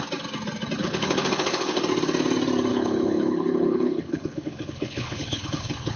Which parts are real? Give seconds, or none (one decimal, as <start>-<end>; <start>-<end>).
0.0-0.8; 1.8-2.7